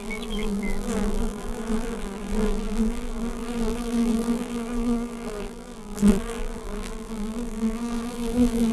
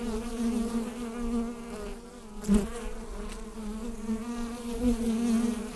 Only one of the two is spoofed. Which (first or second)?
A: first